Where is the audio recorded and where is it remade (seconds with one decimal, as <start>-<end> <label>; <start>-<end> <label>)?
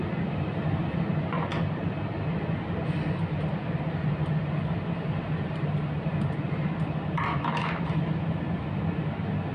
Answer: 0.0-7.3 recorded; 7.3-7.8 remade; 7.8-9.5 recorded